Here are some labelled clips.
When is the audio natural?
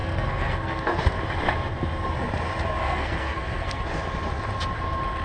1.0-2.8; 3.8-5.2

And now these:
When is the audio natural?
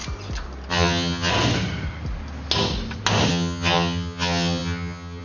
0.0-0.7; 1.3-3.3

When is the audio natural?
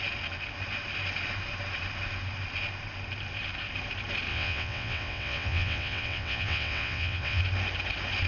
0.0-4.3; 7.4-8.3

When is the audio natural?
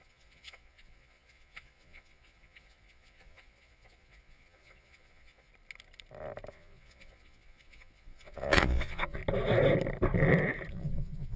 5.5-6.5; 9.2-10.7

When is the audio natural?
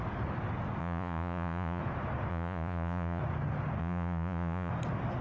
0.0-0.8; 1.8-2.3; 3.2-3.8; 4.7-5.2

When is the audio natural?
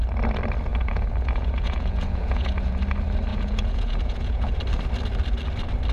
0.0-0.7; 2.8-3.3; 4.6-5.9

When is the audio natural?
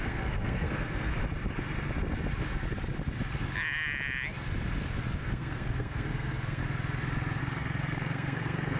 1.2-5.2; 6.6-7.4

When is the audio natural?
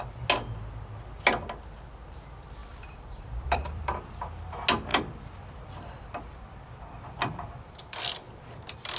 0.0-2.6; 3.9-4.9; 8.4-9.0